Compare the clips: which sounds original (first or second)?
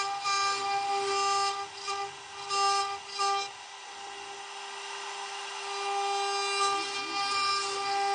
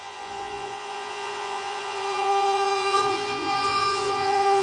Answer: first